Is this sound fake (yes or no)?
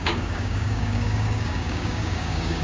yes